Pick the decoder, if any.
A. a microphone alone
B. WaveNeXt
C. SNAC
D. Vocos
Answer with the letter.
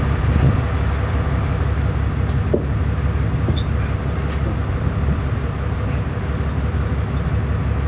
A